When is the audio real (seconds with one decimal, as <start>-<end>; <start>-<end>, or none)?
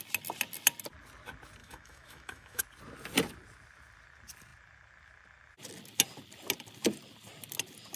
0.0-1.6; 2.6-8.0